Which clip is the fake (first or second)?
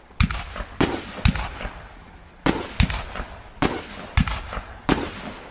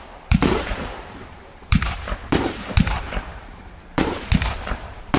second